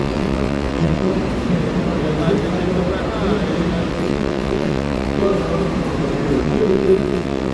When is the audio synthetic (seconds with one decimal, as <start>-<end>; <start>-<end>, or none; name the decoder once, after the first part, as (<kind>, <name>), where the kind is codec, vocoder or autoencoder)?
0.0-1.1 (vocoder, WaveNeXt); 3.9-5.3; 6.4-7.5